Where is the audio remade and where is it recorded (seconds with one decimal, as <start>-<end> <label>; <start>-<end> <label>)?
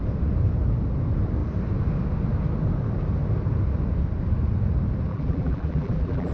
0.0-5.1 recorded; 5.1-6.3 remade